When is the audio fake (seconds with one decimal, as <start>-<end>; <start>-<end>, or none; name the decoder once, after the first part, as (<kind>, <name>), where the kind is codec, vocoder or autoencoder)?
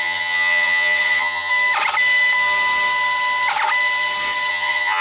0.0-1.5 (vocoder, HiFi-GAN); 4.5-5.0